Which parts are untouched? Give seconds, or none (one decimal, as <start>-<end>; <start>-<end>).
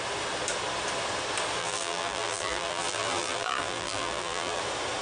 0.0-1.6; 4.6-5.0